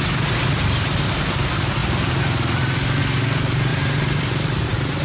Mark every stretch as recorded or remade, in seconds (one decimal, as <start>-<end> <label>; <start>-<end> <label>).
0.0-3.7 recorded; 3.7-5.0 remade